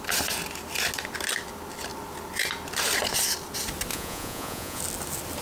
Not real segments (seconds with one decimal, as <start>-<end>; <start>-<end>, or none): 3.9-4.8

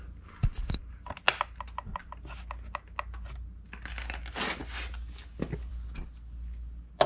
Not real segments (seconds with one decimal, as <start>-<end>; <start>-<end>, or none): none